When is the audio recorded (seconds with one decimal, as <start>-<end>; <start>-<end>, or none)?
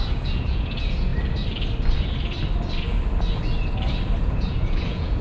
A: 1.1-4.2